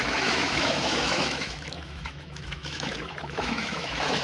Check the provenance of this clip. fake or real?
fake